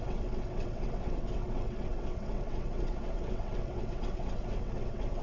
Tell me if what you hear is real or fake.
fake